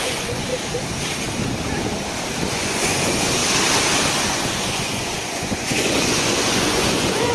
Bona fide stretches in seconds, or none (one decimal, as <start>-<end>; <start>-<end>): 0.5-2.5; 3.4-4.2